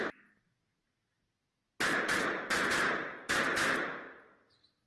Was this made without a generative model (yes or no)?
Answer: yes